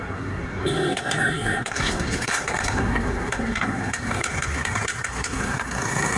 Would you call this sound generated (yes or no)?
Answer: yes